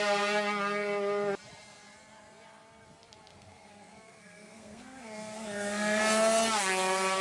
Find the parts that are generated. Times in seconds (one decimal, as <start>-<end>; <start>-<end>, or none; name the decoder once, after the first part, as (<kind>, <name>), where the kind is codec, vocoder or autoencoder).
3.3-6.0 (codec, SNAC)